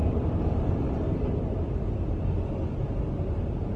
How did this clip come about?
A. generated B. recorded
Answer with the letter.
B